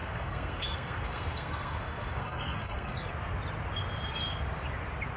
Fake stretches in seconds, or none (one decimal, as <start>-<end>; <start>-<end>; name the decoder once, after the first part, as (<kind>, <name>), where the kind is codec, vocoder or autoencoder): 0.0-3.1 (codec, SNAC)

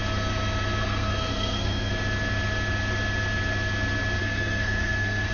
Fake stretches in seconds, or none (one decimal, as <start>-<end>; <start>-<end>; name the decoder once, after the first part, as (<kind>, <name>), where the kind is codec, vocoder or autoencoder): 0.8-1.9 (codec, SNAC); 4.2-5.3